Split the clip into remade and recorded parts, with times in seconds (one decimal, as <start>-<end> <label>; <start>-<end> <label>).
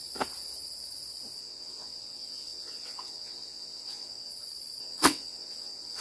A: 0.0-1.4 recorded; 1.4-4.3 remade; 4.3-4.8 recorded; 4.8-6.0 remade